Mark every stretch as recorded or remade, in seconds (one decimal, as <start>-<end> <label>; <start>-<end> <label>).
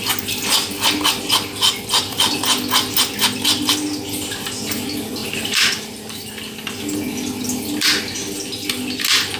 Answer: 0.0-5.2 recorded; 5.2-6.3 remade; 6.3-9.4 recorded